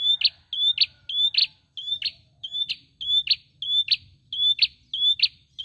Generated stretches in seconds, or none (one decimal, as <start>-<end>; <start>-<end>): none